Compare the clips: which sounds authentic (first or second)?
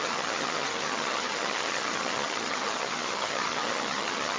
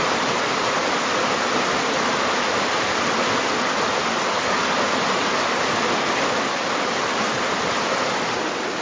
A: second